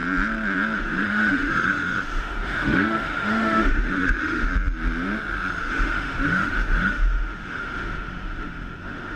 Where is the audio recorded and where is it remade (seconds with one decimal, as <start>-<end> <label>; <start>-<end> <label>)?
0.0-0.8 recorded; 0.8-4.5 remade; 4.5-5.6 recorded; 5.6-9.2 remade